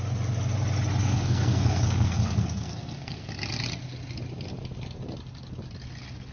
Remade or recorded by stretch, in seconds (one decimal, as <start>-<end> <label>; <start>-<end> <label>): 0.0-1.0 recorded; 1.0-3.3 remade; 3.3-6.3 recorded